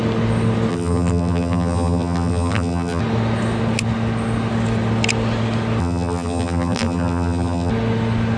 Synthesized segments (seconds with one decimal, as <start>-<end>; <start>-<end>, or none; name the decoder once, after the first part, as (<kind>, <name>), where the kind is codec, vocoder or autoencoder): 0.7-3.0 (vocoder, BigVGAN v2); 5.8-7.7